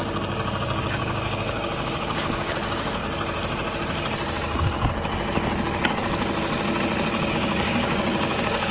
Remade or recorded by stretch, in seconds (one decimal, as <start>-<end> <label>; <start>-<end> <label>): 0.0-0.6 recorded; 0.6-3.0 remade; 3.0-7.3 recorded; 7.3-8.7 remade